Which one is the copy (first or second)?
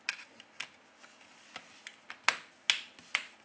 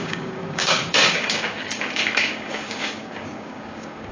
second